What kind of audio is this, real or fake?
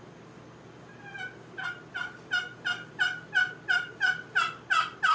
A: real